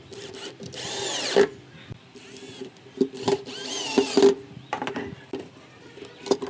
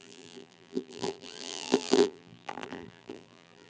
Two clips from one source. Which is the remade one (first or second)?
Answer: second